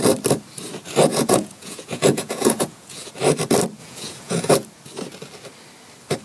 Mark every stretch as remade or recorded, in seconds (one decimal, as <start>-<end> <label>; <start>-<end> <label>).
0.0-1.1 recorded; 1.1-3.1 remade; 3.1-3.8 recorded; 3.8-4.5 remade; 4.5-6.2 recorded